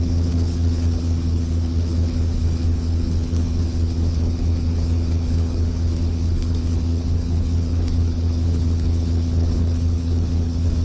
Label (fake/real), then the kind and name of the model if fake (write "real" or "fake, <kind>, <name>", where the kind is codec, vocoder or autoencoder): fake, codec, HILCodec